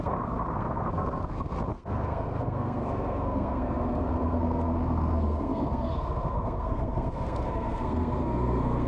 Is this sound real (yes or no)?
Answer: no